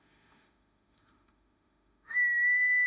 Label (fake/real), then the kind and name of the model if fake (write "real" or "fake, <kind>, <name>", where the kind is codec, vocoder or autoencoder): fake, autoencoder, DAC-VAE